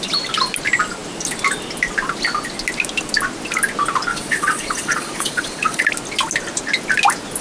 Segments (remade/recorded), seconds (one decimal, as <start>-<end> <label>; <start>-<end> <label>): 0.0-4.1 recorded; 4.1-5.9 remade; 5.9-7.4 recorded

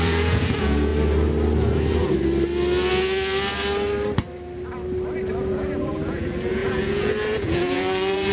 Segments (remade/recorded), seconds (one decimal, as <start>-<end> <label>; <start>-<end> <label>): 0.0-0.9 remade; 0.9-5.5 recorded; 5.5-8.3 remade

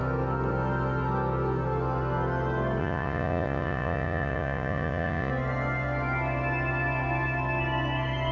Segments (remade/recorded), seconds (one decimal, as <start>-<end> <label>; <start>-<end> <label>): 0.0-2.8 recorded; 2.8-5.3 remade; 5.3-8.3 recorded

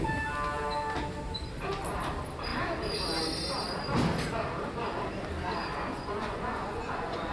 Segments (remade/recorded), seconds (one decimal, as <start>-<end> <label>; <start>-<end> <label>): 0.0-5.7 recorded; 5.7-7.3 remade

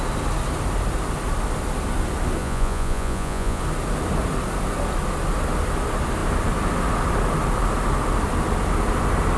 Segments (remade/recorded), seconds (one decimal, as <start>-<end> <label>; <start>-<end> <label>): 0.0-2.4 recorded; 2.4-3.6 remade; 3.6-9.4 recorded

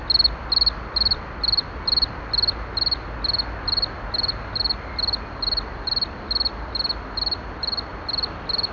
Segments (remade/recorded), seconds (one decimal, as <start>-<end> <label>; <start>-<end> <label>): 0.0-8.7 recorded